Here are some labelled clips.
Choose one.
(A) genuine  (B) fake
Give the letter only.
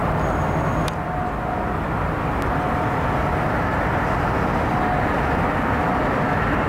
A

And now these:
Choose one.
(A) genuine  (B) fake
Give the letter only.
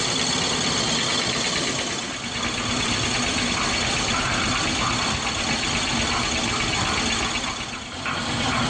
A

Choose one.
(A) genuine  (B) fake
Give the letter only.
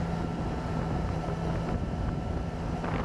A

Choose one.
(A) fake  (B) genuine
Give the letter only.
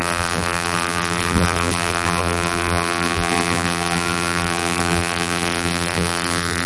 A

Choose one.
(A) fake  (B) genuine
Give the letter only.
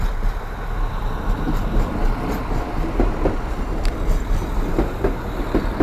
B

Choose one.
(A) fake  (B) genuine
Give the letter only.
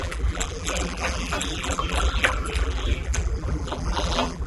A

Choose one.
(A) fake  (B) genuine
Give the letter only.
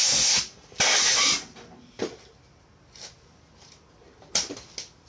B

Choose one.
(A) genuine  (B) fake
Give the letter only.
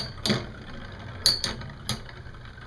A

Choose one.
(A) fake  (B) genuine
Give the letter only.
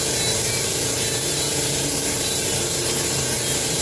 B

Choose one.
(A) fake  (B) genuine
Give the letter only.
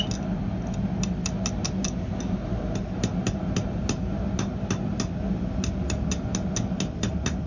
B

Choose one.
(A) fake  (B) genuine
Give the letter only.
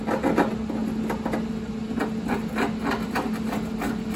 B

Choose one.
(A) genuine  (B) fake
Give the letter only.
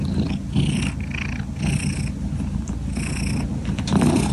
A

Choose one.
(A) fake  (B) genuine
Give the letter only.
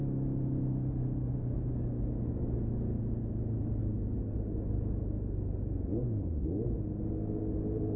B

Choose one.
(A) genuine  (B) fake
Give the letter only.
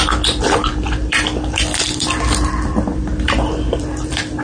B